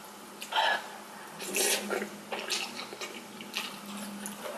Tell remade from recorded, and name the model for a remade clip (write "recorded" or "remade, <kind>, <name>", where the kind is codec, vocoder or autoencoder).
recorded